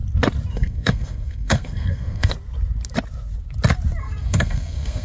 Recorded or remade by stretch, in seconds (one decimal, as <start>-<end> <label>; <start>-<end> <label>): 0.0-0.5 recorded; 0.5-2.3 remade; 2.3-4.0 recorded; 4.0-5.0 remade